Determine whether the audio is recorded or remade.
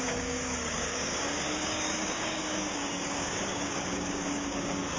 remade